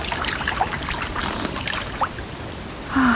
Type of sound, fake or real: real